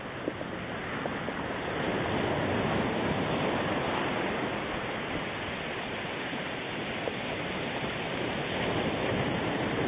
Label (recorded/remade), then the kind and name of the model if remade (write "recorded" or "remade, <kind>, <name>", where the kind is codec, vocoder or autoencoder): recorded